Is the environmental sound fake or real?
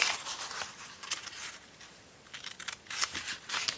real